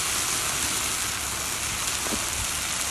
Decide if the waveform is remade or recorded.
recorded